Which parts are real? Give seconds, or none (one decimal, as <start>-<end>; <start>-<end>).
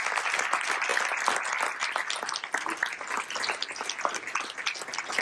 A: 0.0-5.2